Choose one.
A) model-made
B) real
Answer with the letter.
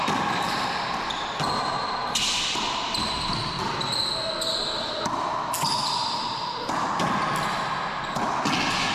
B